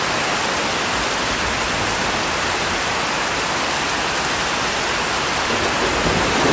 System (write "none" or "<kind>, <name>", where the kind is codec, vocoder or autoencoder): none